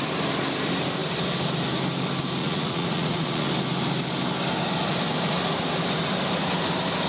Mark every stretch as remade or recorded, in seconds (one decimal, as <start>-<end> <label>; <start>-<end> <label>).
0.0-2.4 recorded; 2.4-3.5 remade; 3.5-7.1 recorded